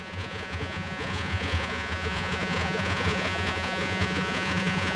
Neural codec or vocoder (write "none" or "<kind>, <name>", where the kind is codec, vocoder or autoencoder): vocoder, Vocos